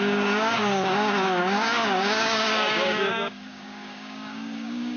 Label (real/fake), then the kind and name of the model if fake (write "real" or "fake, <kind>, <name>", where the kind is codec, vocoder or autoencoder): fake, codec, DAC